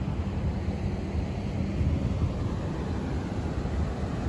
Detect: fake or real real